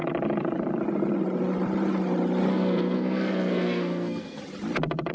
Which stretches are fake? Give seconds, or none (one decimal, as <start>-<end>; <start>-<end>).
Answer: 2.5-4.4